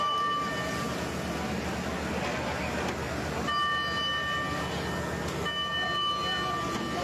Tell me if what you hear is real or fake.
real